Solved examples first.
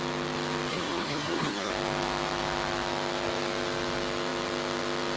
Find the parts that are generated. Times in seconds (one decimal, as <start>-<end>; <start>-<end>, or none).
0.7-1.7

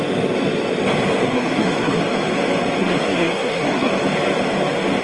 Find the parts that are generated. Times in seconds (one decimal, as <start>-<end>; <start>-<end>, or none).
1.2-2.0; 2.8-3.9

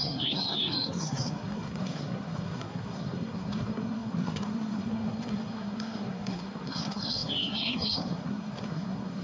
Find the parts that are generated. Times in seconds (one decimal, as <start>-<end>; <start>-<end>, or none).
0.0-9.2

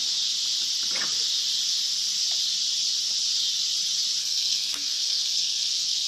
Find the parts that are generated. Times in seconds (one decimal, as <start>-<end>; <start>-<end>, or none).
4.2-6.1

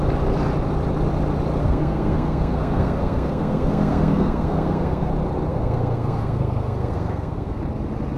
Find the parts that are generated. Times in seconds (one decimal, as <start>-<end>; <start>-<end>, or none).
1.6-5.1; 5.5-7.6

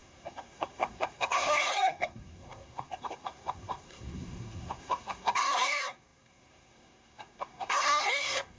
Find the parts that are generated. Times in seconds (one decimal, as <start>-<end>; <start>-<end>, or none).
0.0-8.6